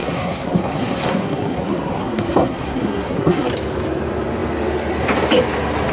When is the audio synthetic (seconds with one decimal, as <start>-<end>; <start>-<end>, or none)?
0.0-3.5